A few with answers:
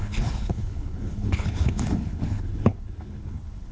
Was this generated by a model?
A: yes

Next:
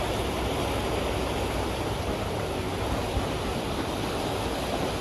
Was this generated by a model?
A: no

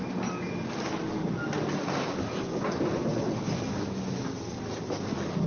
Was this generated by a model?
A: no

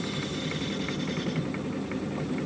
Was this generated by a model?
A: no